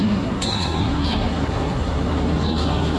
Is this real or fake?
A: fake